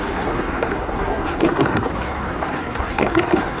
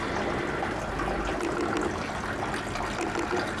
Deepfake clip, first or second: first